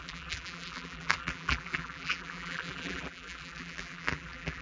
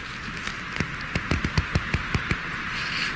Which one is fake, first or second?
first